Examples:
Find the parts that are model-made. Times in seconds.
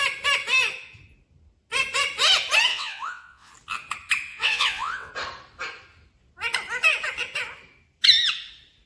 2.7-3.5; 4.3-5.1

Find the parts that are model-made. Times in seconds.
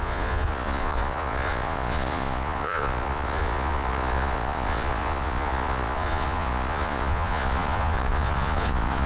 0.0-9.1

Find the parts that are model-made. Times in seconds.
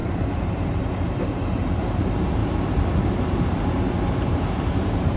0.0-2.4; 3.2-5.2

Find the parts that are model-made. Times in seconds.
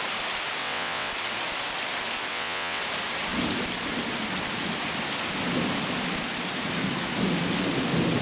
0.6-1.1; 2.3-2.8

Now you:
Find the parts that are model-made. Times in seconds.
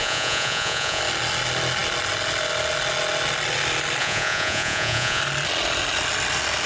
0.0-1.0; 4.0-5.2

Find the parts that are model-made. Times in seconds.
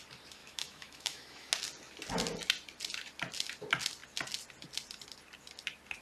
0.4-1.5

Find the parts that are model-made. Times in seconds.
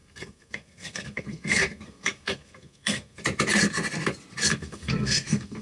0.0-3.2; 4.5-5.6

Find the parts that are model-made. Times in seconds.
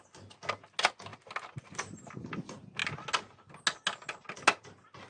none